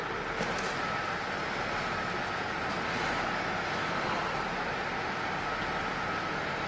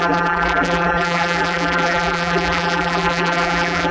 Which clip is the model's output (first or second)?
second